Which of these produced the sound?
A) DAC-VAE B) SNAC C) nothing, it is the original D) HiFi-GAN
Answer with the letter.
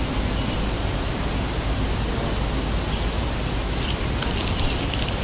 C